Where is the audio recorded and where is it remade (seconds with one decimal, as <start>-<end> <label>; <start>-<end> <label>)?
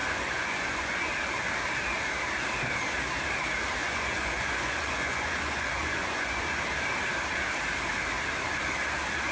0.0-1.0 remade; 1.0-3.8 recorded; 3.8-6.6 remade; 6.6-9.3 recorded